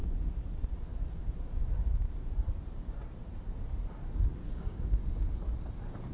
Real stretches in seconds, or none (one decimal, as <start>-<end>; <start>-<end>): 0.0-4.4; 5.0-6.1

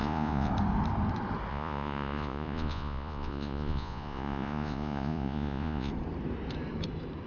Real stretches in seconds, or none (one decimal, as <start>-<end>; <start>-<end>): 0.5-1.5; 5.9-7.3

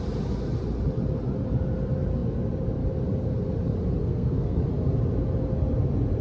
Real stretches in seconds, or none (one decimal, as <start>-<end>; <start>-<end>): 0.0-4.0; 4.6-6.2

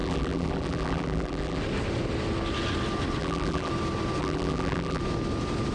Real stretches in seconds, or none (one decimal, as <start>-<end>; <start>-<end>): 1.6-3.2; 3.7-4.2; 5.0-5.7

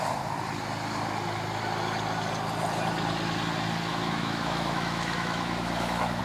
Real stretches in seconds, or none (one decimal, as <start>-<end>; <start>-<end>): 0.0-3.9

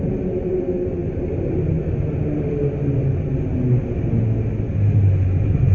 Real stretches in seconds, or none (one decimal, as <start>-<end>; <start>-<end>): 0.0-5.7

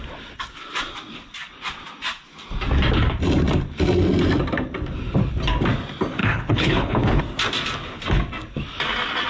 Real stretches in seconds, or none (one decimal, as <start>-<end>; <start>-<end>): 0.0-6.2; 7.2-9.3

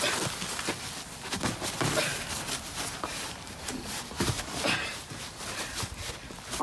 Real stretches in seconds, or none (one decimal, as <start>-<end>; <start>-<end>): 0.0-2.1; 6.1-6.6